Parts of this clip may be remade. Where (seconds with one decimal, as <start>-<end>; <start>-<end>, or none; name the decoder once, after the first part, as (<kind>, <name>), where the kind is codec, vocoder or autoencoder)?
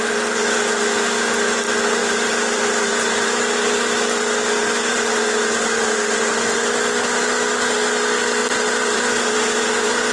2.0-5.2 (vocoder, BigVGAN v2); 8.4-9.7